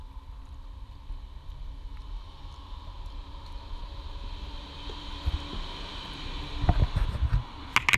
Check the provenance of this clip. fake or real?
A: real